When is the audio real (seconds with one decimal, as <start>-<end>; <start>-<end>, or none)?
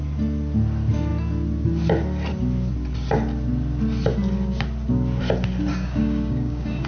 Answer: 0.0-5.7